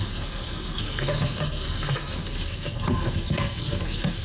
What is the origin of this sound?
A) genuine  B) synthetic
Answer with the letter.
B